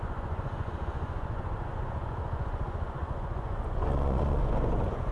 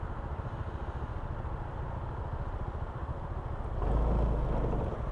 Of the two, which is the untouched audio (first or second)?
second